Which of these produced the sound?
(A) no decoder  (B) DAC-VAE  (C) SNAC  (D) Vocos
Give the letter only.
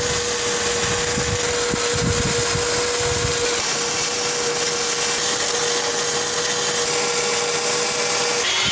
A